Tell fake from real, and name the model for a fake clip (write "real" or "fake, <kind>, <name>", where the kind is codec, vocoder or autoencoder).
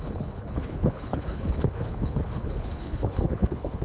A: fake, codec, HILCodec